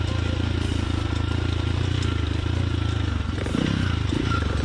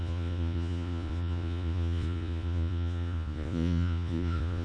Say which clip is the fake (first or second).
second